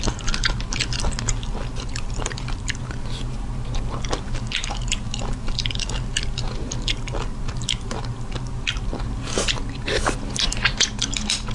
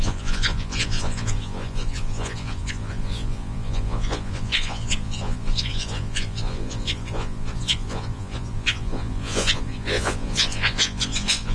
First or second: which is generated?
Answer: second